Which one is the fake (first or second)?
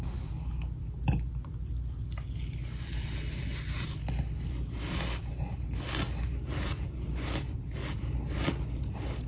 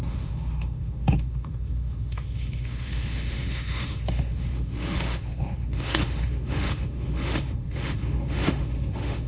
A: second